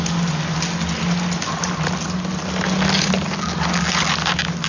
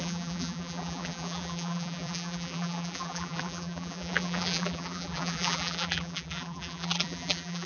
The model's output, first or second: second